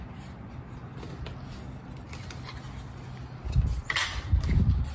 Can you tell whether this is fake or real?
real